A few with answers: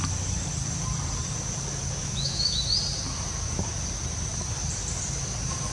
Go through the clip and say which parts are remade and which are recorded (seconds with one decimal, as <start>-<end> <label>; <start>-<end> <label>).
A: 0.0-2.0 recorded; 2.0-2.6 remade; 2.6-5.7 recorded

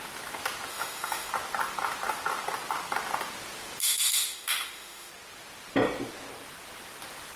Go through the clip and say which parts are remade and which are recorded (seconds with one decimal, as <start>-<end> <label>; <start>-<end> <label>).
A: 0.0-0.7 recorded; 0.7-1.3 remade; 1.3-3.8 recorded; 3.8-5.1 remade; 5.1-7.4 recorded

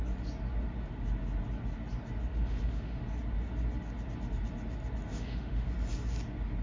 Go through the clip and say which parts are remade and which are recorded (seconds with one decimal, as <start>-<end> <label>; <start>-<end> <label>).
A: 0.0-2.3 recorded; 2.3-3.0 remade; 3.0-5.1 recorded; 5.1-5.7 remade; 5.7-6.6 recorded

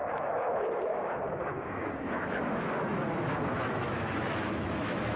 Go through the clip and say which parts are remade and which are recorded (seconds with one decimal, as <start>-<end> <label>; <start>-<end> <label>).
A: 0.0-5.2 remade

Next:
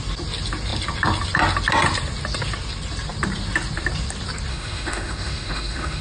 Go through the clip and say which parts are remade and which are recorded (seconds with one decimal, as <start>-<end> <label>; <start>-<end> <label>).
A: 0.0-4.5 recorded; 4.5-6.0 remade